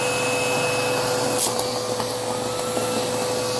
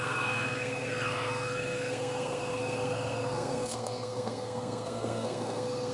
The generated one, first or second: second